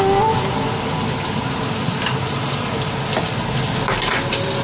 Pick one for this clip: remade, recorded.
recorded